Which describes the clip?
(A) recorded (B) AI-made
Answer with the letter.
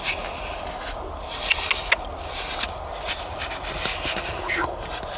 A